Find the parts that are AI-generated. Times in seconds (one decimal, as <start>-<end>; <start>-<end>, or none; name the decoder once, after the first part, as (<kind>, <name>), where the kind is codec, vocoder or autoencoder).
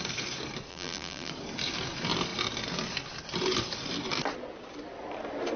0.7-1.3 (vocoder, BigVGAN v2)